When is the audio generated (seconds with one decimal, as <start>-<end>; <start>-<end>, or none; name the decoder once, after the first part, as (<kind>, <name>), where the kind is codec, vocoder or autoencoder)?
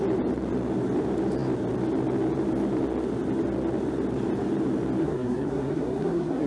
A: 5.0-6.5 (codec, SNAC)